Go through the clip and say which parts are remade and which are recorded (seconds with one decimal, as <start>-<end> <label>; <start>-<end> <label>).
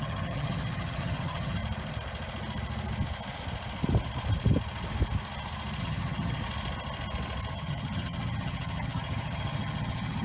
0.0-1.6 remade; 1.6-5.8 recorded; 5.8-6.4 remade; 6.4-7.5 recorded; 7.5-10.2 remade